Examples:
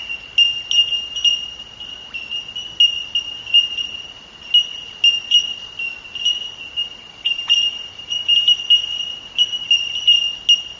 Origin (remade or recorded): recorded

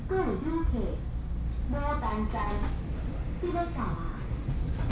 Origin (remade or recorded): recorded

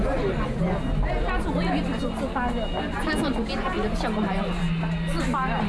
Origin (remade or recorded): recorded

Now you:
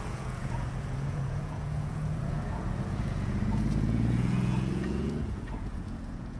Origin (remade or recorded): remade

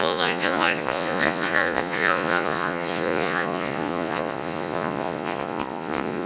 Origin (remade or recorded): remade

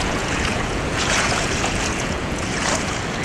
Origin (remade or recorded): remade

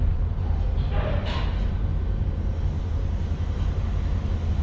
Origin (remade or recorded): recorded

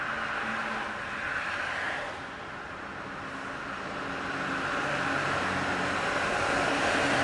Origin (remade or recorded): recorded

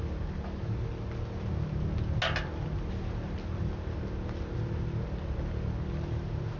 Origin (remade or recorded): recorded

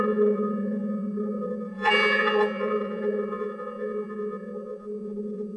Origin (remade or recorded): remade